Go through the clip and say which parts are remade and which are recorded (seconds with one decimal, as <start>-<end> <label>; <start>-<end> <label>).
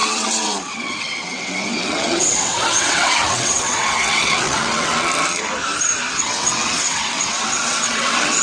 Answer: 0.0-4.9 remade; 4.9-6.1 recorded; 6.1-8.4 remade